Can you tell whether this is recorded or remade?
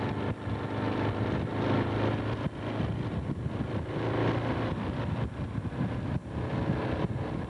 recorded